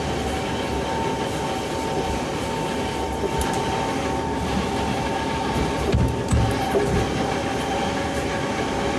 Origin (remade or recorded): recorded